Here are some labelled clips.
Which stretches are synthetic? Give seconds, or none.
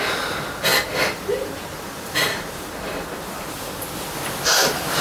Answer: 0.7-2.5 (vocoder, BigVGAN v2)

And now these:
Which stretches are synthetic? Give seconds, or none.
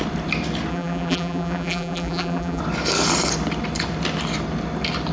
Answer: 0.7-2.6 (vocoder, BigVGAN v2)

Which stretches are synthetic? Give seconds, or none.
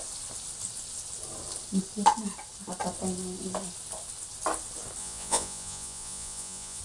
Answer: 5.0-6.8 (vocoder, Vocos)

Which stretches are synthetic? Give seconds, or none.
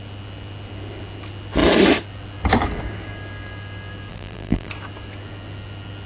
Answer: 4.1-4.7 (vocoder, BigVGAN v2)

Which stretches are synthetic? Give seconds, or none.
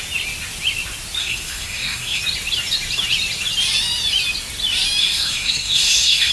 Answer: 1.2-2.2 (codec, SNAC); 5.0-6.3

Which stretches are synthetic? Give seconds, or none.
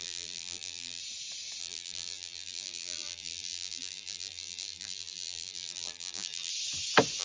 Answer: 0.0-1.0 (vocoder, BigVGAN v2); 1.6-6.5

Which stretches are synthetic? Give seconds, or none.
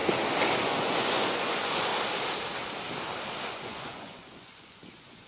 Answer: 0.6-1.9 (vocoder, Vocos); 3.4-5.3